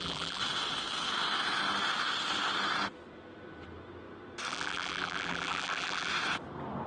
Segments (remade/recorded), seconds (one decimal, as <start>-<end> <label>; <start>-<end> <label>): 0.0-0.4 remade; 0.4-4.5 recorded; 4.5-6.1 remade; 6.1-6.9 recorded